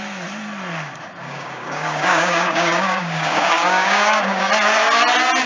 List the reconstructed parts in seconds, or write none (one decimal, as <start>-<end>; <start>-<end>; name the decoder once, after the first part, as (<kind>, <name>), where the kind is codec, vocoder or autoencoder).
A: 1.2-4.5 (codec, DAC)